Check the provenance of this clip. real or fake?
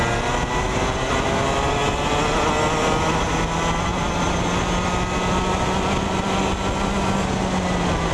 real